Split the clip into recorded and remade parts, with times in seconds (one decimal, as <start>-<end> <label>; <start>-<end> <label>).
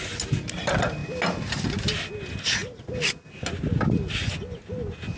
0.0-5.2 recorded